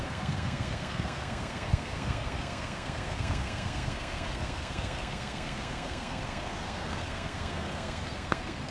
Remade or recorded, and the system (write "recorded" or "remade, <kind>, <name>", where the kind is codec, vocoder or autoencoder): remade, codec, SNAC